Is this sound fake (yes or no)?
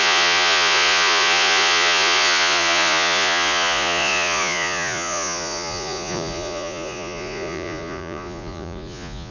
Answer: yes